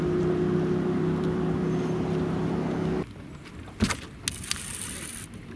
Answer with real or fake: real